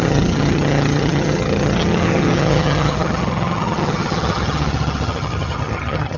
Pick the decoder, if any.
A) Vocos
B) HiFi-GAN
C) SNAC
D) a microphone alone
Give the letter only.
B